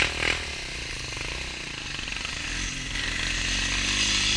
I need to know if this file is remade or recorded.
recorded